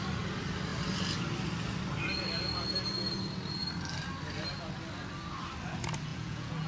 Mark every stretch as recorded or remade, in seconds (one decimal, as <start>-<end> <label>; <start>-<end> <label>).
0.0-6.1 recorded; 6.1-6.7 remade